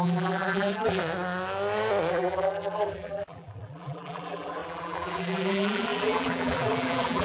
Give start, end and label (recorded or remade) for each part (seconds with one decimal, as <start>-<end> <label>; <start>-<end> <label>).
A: 0.0-1.0 remade; 1.0-2.1 recorded; 2.1-7.2 remade